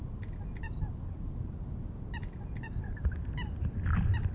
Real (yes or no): yes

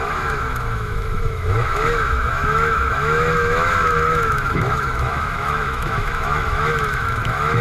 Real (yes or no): no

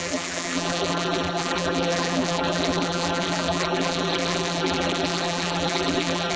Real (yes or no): no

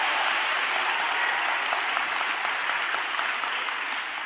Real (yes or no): yes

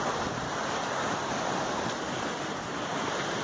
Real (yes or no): yes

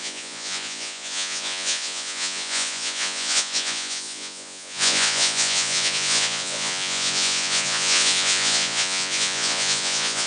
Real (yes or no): no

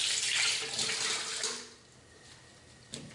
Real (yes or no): yes